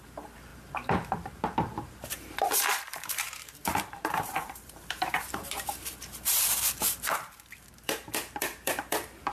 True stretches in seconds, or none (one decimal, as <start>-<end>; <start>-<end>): 6.3-6.9